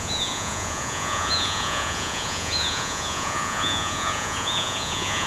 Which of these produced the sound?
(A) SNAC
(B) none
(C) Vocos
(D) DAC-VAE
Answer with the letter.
C